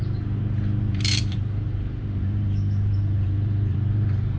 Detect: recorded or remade remade